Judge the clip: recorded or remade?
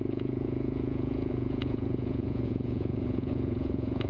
remade